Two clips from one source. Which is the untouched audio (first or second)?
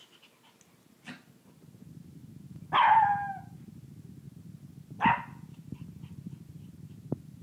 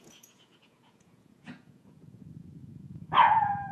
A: first